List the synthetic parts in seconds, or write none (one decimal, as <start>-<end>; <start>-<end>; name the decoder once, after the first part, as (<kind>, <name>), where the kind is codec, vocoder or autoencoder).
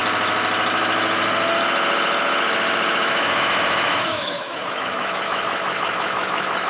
2.9-6.7 (autoencoder, DAC-VAE)